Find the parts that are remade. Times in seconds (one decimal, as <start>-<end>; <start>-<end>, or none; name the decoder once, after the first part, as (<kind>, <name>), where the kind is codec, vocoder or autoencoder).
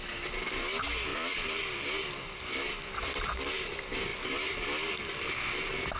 1.1-3.5 (vocoder, BigVGAN v2); 4.1-5.4